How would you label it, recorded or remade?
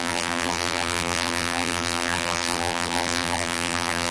remade